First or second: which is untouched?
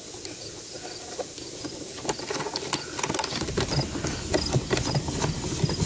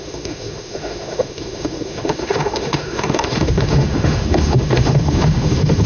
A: first